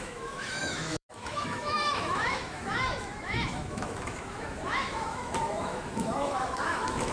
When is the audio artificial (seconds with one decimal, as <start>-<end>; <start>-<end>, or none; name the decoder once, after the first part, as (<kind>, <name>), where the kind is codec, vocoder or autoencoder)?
0.0-7.1 (autoencoder, DAC-VAE)